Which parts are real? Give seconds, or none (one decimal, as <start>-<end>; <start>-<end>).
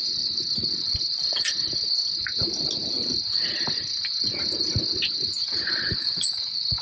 0.0-6.8